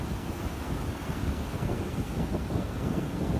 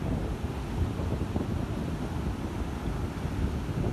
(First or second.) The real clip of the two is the second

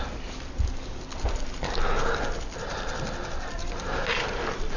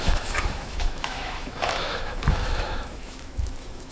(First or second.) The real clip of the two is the first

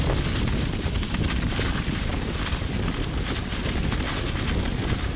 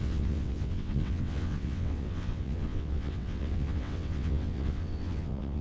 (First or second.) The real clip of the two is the first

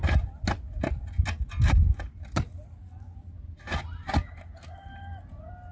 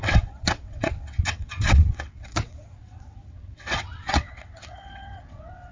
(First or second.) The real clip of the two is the first